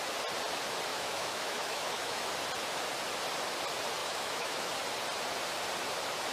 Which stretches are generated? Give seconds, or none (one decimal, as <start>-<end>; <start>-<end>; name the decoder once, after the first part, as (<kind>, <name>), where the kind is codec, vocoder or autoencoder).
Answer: 0.9-2.3 (autoencoder, DAC-VAE); 4.0-4.7